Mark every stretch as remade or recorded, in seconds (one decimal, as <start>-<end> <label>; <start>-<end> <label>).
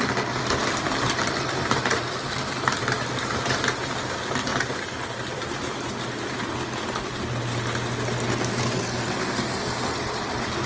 0.0-0.6 recorded; 0.6-1.4 remade; 1.4-4.5 recorded; 4.5-5.4 remade; 5.4-10.7 recorded